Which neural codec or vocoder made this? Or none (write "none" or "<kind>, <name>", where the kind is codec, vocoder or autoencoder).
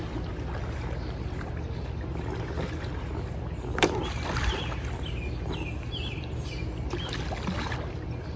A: none